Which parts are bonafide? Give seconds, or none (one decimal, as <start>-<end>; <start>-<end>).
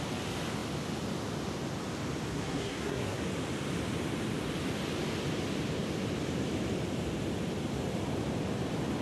0.0-2.3; 3.2-9.0